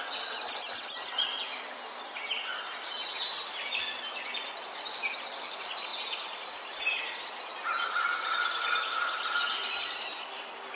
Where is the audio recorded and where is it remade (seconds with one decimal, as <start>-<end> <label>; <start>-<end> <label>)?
0.0-5.9 recorded; 5.9-6.9 remade; 6.9-10.8 recorded